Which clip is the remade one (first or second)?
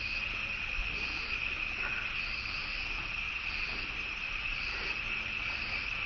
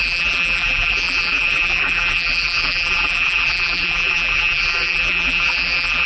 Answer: second